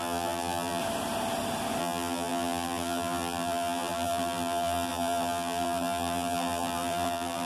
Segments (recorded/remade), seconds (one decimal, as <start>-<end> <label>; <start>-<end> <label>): 0.0-0.8 remade; 0.8-1.8 recorded; 1.8-7.5 remade